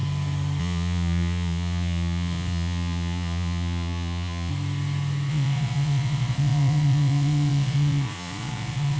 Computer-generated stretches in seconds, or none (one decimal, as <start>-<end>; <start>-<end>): 0.6-4.5; 5.3-9.0